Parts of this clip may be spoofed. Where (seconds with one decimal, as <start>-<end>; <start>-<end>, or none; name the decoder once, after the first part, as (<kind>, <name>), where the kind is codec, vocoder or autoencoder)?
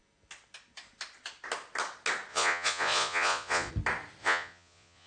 2.3-3.7 (vocoder, Vocos); 4.2-5.1